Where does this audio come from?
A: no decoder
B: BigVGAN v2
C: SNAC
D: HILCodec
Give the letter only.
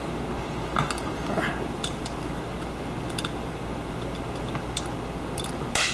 A